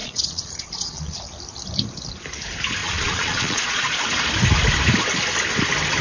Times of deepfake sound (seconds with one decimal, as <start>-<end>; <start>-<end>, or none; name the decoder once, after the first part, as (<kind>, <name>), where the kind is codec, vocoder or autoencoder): 0.0-1.2 (vocoder, Vocos); 2.8-4.0